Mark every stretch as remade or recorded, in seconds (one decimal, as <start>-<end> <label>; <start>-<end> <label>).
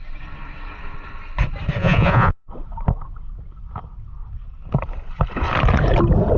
0.0-1.8 recorded; 1.8-2.5 remade; 2.5-6.4 recorded